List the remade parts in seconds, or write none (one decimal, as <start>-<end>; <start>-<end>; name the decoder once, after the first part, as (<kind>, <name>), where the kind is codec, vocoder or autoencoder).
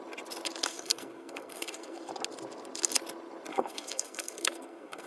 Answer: 0.7-2.1 (codec, SNAC); 3.5-5.1